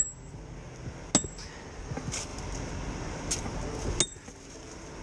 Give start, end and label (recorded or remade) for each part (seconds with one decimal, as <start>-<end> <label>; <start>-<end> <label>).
0.0-5.0 recorded

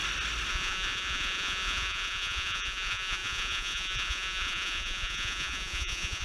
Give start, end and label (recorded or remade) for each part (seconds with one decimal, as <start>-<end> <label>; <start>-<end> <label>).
0.0-0.5 recorded; 0.5-6.2 remade